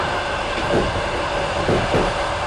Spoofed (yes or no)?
no